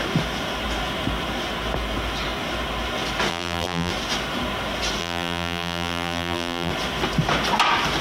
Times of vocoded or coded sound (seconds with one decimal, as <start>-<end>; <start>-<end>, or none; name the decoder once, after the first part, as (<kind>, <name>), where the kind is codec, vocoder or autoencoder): 3.3-3.9 (vocoder, BigVGAN v2); 5.0-6.7